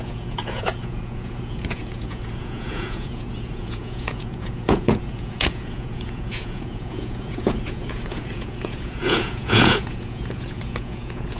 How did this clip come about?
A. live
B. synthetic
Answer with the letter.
B